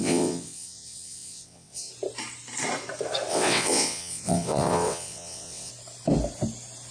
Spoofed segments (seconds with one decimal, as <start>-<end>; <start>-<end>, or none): 0.0-1.9; 3.3-5.7